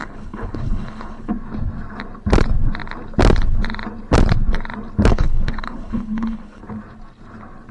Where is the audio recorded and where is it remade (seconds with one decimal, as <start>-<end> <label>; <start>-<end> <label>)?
0.0-1.3 remade; 1.3-5.1 recorded; 5.1-6.6 remade; 6.6-7.7 recorded